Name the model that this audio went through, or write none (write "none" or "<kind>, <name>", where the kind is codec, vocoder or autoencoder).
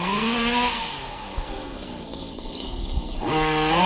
codec, SNAC